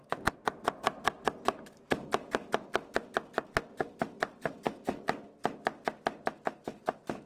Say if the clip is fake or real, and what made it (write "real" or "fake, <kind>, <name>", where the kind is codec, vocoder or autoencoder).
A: real